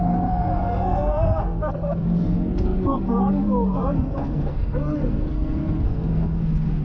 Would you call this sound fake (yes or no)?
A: yes